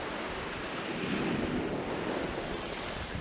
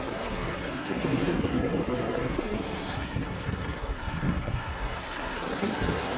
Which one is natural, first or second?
first